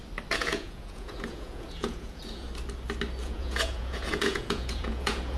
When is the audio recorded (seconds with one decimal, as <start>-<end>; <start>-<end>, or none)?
0.0-0.4; 2.5-3.2

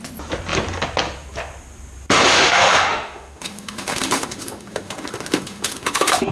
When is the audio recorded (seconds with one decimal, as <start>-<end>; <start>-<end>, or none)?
0.0-2.3

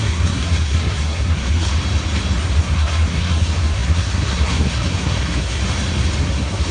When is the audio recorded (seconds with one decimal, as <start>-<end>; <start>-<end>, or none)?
1.7-2.6; 5.6-6.2

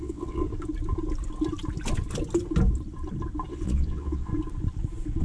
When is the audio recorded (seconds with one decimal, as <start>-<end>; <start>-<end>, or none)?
0.4-3.5; 4.3-5.2

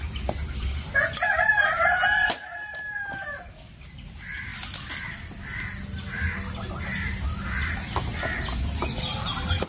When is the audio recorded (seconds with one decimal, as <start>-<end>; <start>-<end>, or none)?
0.0-9.7